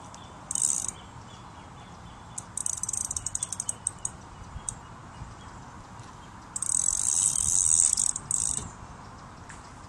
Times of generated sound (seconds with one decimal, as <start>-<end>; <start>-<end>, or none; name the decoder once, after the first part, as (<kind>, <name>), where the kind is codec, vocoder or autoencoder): none